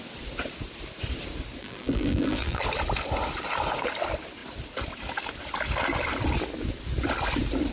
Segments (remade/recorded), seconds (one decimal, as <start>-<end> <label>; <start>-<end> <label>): 0.0-1.6 recorded; 1.6-2.6 remade; 2.6-7.7 recorded